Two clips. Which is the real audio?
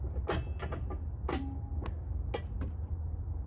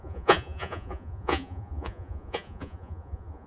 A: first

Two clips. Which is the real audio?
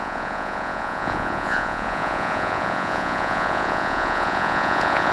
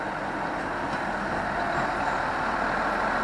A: second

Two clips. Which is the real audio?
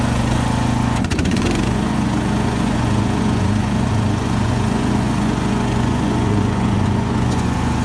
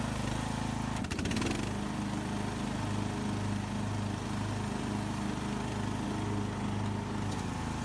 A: second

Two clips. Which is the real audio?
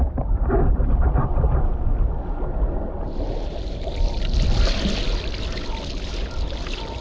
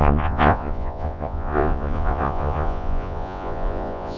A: first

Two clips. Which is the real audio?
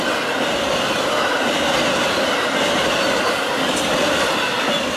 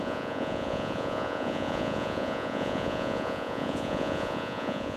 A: first